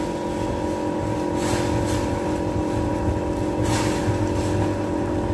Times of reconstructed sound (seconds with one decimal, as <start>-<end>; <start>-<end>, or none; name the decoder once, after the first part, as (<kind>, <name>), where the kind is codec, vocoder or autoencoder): none